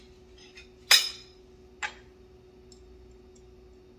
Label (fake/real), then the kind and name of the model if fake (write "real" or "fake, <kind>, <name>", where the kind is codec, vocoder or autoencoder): real